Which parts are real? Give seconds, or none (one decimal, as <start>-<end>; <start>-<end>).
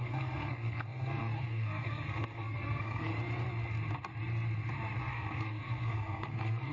3.1-5.0